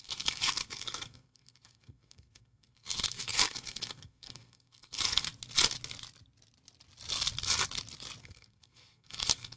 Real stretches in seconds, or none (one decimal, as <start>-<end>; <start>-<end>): 5.3-8.2